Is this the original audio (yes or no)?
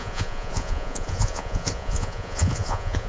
no